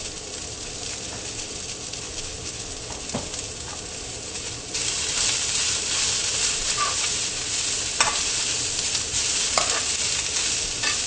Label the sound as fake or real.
real